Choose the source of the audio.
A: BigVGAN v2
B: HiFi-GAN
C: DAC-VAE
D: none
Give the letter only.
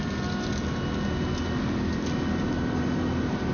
D